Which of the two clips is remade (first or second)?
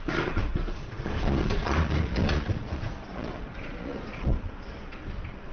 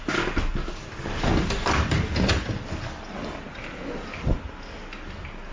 first